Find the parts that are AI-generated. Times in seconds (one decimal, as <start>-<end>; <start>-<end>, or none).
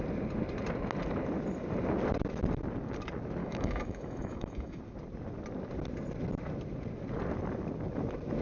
3.4-4.8